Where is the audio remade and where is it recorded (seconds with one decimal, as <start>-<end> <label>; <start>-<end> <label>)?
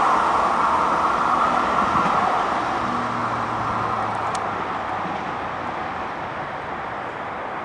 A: 0.0-7.6 recorded